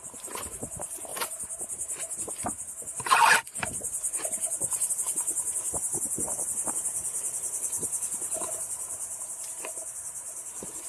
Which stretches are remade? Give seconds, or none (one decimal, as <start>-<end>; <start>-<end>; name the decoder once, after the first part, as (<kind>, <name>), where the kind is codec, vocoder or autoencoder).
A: 0.0-1.1 (vocoder, BigVGAN v2); 4.9-10.9